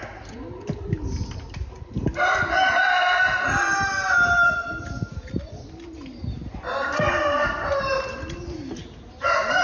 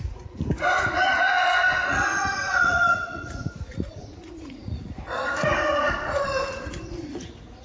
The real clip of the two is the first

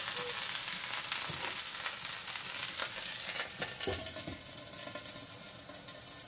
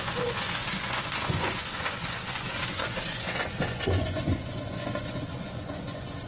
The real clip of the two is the first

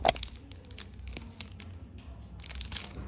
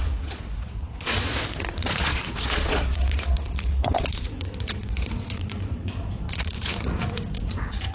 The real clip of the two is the first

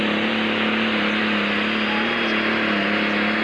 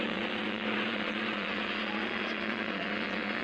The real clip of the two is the first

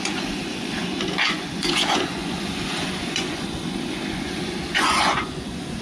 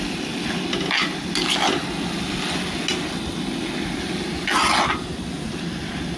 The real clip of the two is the second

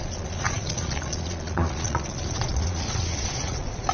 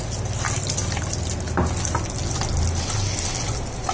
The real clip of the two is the second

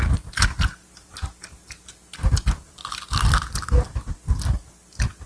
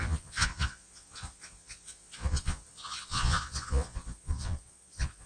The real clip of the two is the first